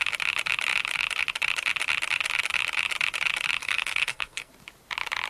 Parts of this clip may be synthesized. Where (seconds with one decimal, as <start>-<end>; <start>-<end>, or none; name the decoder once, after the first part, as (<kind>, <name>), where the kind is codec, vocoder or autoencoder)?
3.6-4.5 (codec, SNAC)